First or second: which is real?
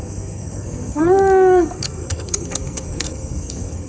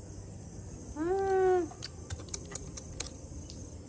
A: second